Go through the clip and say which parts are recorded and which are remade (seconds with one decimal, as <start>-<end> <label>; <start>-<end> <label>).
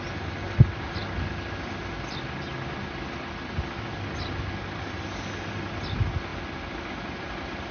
0.0-7.7 recorded